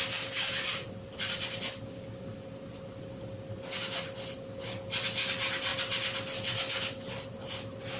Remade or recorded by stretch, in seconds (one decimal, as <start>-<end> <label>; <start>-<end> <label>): 0.0-8.0 recorded